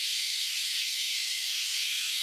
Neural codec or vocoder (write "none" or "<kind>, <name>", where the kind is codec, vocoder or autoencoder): codec, DAC